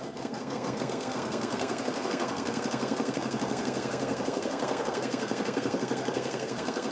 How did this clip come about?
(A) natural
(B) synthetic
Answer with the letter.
B